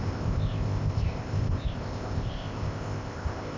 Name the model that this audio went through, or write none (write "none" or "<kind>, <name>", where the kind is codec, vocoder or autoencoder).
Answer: codec, ZipCodec